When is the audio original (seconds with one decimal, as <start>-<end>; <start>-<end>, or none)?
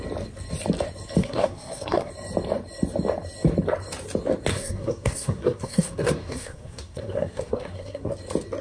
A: 0.0-1.2; 2.1-4.5; 8.1-8.6